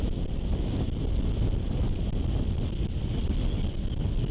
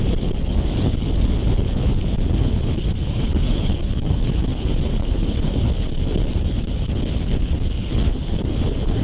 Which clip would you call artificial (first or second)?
second